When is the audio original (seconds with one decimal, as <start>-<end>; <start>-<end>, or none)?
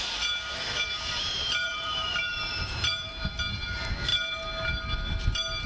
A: 0.0-1.6; 3.4-5.7